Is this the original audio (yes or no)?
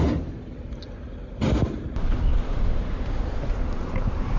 yes